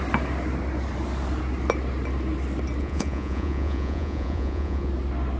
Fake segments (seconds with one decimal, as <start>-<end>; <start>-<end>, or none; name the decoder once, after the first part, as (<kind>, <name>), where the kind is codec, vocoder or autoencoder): 2.8-4.9 (vocoder, Vocos)